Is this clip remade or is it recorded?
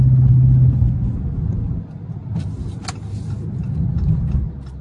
recorded